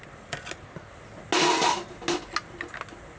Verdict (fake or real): real